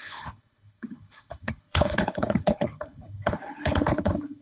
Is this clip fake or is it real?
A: fake